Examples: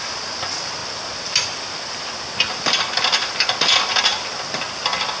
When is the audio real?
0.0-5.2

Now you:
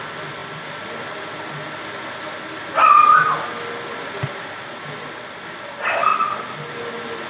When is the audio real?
0.0-7.3

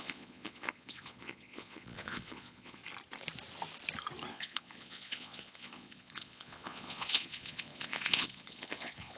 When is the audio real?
2.8-4.3

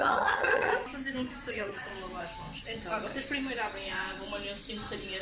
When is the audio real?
0.7-1.5; 1.9-5.2

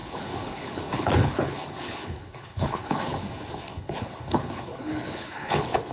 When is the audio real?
none